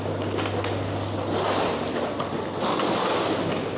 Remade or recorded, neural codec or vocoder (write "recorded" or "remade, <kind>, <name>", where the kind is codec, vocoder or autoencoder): recorded